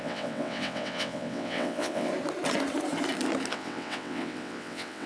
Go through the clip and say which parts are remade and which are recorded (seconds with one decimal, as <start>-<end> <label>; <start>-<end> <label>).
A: 0.0-2.1 remade; 2.1-3.5 recorded; 3.5-5.1 remade

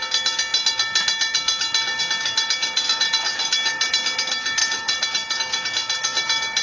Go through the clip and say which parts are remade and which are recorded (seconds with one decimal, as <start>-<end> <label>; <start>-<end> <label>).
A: 0.0-6.6 recorded

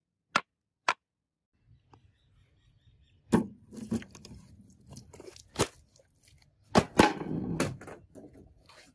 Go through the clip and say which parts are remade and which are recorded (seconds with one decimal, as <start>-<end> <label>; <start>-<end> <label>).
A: 0.0-8.9 recorded

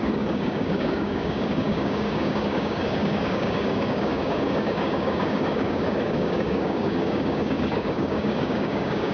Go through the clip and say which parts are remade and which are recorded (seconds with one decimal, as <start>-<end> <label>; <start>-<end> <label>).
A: 0.0-9.1 remade

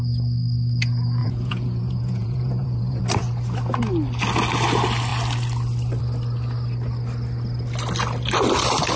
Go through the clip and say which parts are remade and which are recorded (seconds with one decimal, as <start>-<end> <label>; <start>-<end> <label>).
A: 0.0-1.2 recorded; 1.2-3.0 remade; 3.0-9.0 recorded

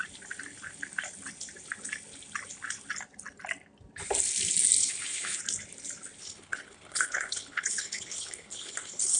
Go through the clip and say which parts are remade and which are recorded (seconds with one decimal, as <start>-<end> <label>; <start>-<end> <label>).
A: 0.0-4.8 recorded; 4.8-5.4 remade; 5.4-6.2 recorded; 6.2-9.2 remade

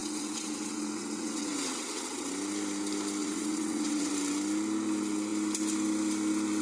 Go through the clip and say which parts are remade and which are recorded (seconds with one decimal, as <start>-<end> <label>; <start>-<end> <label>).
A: 0.0-2.3 remade; 2.3-3.2 recorded; 3.2-4.1 remade; 4.1-6.6 recorded